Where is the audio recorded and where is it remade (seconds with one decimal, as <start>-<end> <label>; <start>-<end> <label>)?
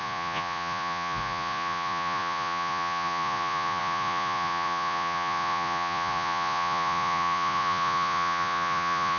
0.0-9.2 remade